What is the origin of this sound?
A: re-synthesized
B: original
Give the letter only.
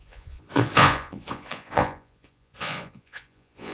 A